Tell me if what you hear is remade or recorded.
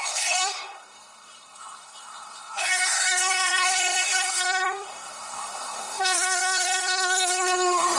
remade